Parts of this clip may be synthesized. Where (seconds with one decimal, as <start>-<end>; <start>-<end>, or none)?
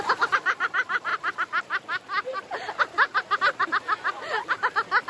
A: none